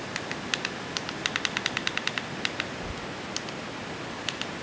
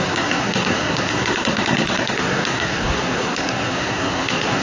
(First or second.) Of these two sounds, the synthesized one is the second